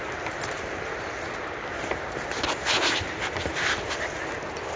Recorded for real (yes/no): yes